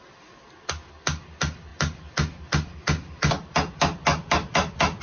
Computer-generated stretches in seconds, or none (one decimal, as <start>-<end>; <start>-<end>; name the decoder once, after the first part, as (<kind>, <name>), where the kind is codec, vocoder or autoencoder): none